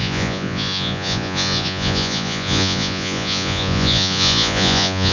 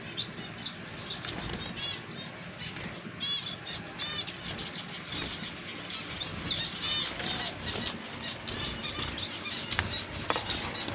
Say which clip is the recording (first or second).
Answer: second